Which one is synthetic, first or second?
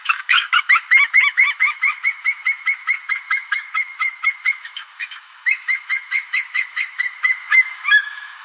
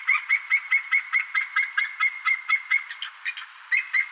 first